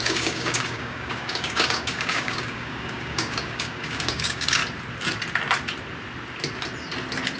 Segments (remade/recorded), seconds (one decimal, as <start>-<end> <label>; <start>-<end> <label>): 0.0-4.6 remade; 4.6-7.4 recorded